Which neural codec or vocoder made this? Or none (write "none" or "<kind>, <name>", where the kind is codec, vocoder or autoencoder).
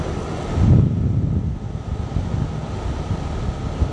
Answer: none